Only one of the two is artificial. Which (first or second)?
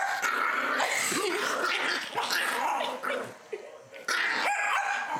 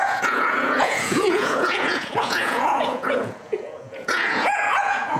second